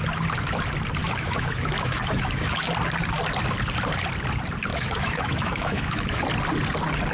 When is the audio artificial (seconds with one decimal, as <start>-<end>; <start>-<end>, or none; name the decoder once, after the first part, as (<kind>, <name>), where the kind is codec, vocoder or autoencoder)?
1.0-2.7 (autoencoder, DAC-VAE); 4.7-6.2

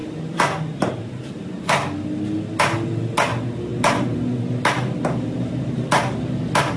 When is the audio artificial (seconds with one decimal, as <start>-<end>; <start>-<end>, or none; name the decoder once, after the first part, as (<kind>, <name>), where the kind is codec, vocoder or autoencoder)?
none

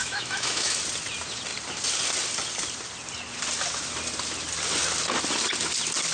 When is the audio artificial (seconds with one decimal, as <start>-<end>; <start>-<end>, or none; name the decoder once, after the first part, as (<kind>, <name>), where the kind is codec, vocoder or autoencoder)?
0.0-0.8 (autoencoder, DAC-VAE)

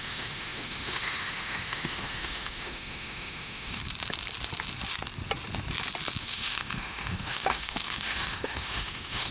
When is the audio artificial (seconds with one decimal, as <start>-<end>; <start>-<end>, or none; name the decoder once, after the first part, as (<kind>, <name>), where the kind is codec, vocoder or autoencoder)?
0.0-3.8 (autoencoder, DAC-VAE); 6.2-9.3